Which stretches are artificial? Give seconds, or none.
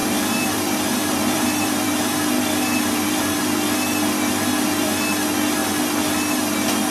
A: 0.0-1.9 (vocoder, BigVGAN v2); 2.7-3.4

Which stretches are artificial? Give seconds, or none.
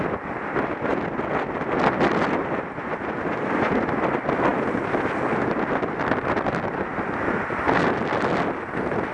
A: none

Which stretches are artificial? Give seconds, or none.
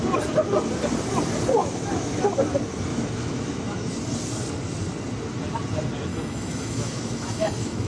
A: 1.6-2.2 (autoencoder, DAC-VAE); 2.9-3.9; 6.1-7.9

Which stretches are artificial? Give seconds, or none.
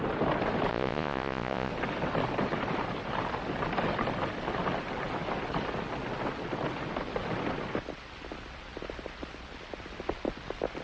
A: 0.7-1.7 (vocoder, Vocos)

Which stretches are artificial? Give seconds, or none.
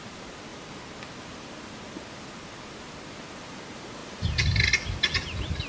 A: none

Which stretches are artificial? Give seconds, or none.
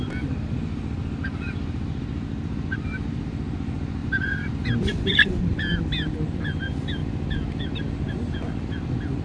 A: 1.2-3.2 (vocoder, BigVGAN v2); 4.0-5.4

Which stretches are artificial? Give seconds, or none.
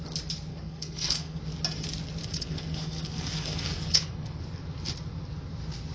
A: 0.5-1.4 (codec, SNAC); 2.2-4.4